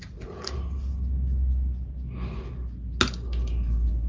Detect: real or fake real